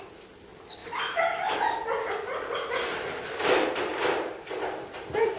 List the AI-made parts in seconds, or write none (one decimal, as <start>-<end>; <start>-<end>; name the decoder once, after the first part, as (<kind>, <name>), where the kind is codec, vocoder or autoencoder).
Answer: 0.8-1.6 (autoencoder, DAC-VAE)